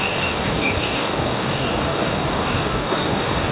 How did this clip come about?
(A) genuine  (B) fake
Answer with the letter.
B